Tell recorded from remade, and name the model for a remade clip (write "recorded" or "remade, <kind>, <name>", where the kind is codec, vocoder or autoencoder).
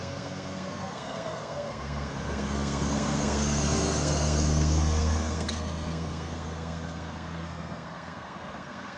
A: remade, codec, SNAC